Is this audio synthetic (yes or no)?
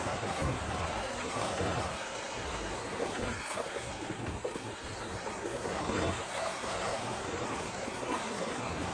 yes